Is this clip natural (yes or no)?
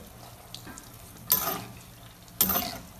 yes